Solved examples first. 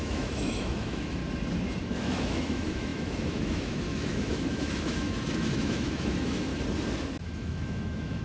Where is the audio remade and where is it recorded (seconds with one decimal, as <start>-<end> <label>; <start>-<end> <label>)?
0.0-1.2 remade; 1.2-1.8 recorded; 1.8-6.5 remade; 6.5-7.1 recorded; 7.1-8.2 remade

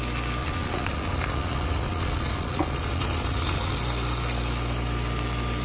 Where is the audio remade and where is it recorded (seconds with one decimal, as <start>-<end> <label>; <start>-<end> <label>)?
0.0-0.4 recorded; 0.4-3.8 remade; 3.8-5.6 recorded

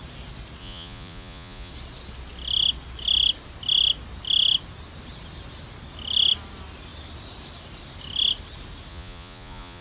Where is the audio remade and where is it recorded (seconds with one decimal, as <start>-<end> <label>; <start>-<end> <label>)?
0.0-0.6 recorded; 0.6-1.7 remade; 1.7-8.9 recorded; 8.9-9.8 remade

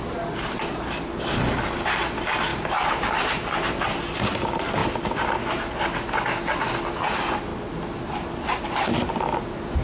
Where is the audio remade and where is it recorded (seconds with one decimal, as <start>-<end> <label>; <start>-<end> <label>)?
0.0-9.8 recorded

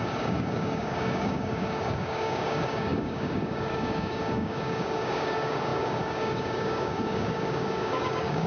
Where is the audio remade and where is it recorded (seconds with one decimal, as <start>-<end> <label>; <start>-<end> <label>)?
0.0-8.5 remade